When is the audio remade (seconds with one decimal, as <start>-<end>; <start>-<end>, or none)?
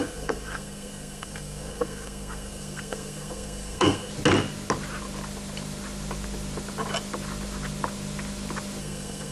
0.0-4.1; 8.8-9.3